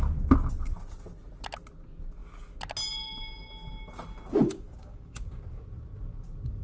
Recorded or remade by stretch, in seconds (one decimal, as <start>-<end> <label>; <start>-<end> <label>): 0.0-4.4 recorded; 4.4-5.4 remade; 5.4-6.6 recorded